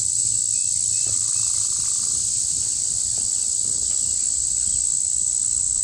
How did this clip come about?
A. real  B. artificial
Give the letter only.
A